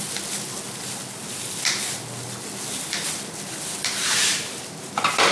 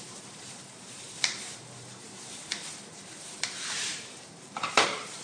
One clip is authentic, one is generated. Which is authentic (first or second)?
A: first